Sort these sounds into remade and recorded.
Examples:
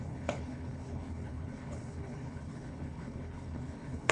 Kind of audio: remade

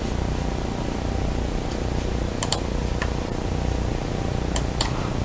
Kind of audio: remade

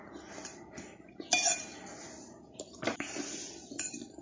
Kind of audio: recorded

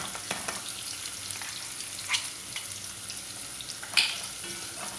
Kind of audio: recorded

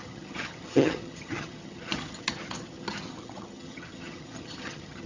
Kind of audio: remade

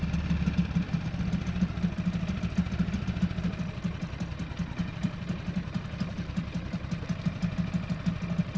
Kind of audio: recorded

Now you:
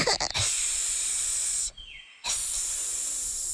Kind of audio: recorded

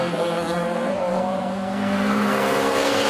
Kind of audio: remade